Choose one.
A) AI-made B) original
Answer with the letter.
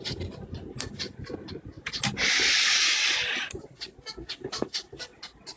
B